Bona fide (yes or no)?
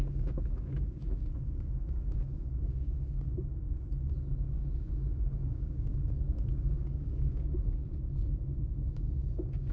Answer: no